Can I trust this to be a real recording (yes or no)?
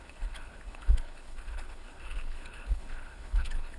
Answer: no